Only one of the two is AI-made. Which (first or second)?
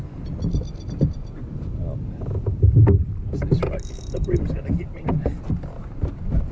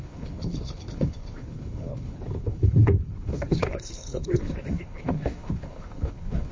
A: second